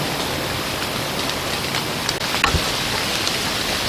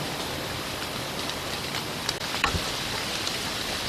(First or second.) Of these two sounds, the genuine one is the first